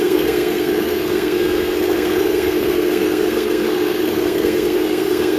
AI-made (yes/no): yes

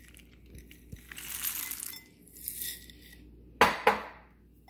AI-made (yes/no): no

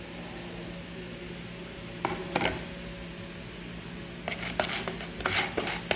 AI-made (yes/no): no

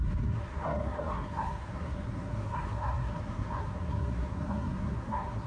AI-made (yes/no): yes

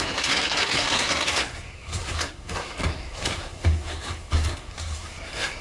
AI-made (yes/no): yes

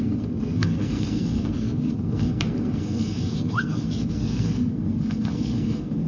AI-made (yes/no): yes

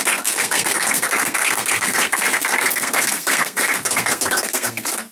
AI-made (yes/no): yes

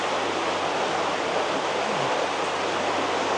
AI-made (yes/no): no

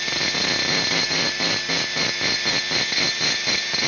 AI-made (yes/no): no